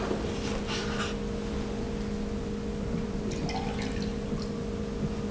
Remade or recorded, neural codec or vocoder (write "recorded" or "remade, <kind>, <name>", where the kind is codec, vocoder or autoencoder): recorded